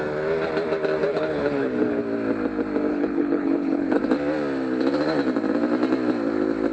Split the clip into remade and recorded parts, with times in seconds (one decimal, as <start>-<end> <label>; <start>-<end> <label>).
0.0-1.0 recorded; 1.0-2.0 remade; 2.0-2.9 recorded; 2.9-4.0 remade; 4.0-6.7 recorded